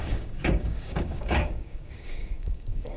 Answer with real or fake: fake